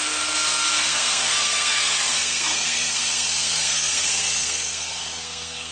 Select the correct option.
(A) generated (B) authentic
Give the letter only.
A